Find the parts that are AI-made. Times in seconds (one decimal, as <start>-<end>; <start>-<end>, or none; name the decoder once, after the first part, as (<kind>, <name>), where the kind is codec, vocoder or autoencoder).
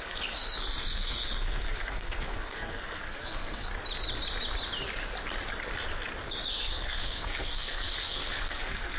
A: 0.0-3.7 (codec, SNAC); 6.5-9.0